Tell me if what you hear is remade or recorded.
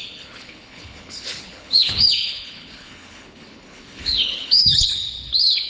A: remade